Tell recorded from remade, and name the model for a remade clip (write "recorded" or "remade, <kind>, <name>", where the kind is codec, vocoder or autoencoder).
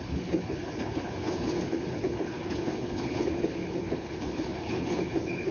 remade, codec, HILCodec